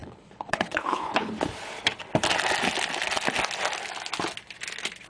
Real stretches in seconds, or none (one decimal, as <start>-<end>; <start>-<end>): 1.3-5.1